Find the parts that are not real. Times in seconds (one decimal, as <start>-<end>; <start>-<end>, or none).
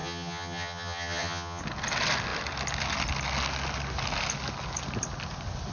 0.0-1.6